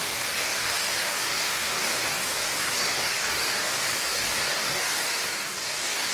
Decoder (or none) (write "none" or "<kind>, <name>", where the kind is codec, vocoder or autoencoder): codec, DAC